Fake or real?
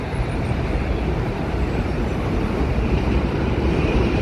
real